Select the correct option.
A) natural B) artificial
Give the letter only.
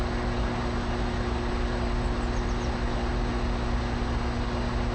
A